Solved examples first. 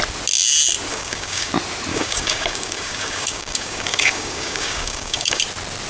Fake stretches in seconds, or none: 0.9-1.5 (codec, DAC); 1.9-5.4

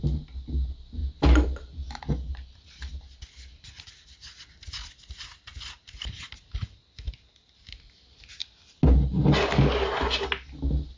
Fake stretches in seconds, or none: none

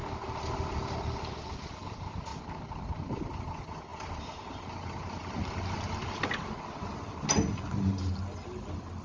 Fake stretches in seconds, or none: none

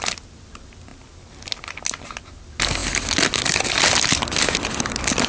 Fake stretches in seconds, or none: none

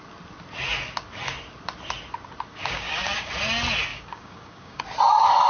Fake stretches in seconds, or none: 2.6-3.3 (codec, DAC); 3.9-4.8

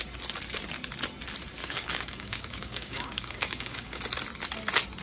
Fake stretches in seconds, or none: 1.6-4.0 (codec, DAC)

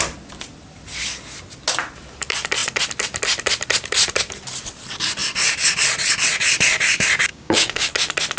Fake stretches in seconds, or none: 7.3-7.9 (codec, DAC)